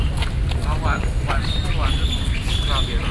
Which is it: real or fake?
fake